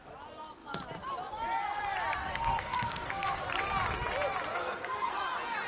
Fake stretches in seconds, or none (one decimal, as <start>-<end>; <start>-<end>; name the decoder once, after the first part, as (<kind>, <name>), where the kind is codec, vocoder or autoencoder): 2.2-3.4 (codec, SNAC); 4.5-5.2